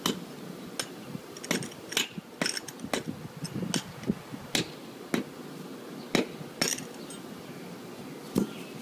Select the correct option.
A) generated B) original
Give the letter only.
B